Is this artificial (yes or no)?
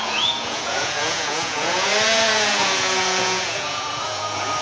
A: yes